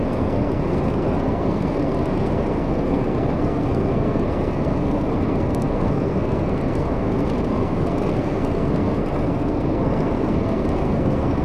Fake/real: fake